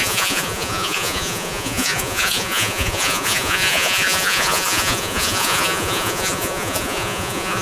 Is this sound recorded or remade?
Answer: remade